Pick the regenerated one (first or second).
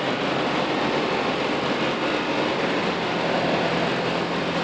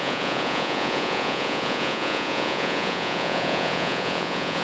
second